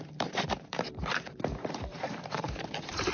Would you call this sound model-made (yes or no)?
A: yes